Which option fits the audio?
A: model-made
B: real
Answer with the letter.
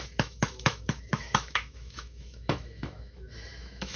A